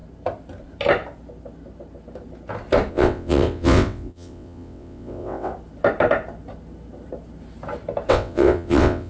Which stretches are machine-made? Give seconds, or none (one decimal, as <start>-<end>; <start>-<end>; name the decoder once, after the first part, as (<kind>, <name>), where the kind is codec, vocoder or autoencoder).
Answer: 2.9-5.5 (vocoder, WaveNeXt); 8.1-9.1